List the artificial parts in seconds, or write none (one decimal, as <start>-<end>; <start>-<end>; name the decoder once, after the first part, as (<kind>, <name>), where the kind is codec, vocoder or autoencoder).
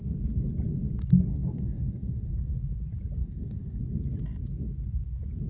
1.3-2.6 (codec, SNAC); 3.2-3.8